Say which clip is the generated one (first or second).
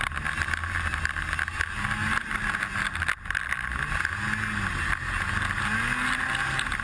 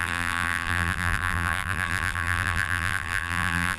second